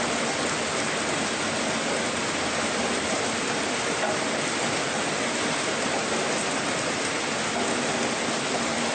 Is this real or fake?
real